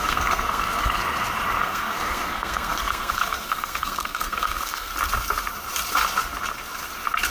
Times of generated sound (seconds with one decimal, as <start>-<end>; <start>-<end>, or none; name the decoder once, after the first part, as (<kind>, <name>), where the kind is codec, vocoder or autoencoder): 0.0-1.0 (codec, SNAC); 1.6-4.9